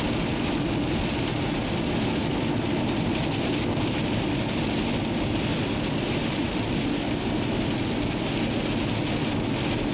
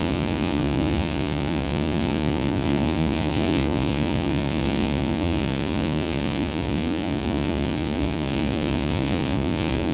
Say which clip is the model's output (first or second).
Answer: second